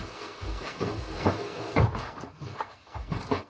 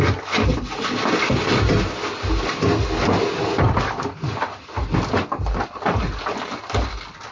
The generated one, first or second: first